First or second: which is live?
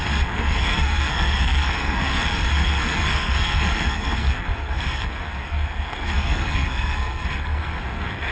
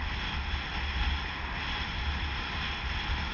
second